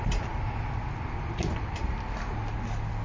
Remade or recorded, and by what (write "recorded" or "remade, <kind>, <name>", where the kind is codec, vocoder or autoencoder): recorded